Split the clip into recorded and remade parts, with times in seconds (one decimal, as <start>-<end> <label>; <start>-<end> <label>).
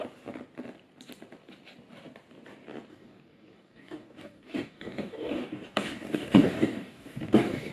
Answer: 0.0-2.9 recorded; 2.9-7.7 remade